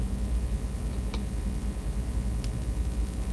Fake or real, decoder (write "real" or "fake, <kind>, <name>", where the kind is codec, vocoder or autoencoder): real